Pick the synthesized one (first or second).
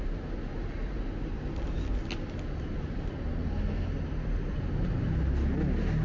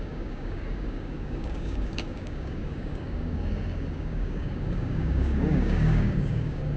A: second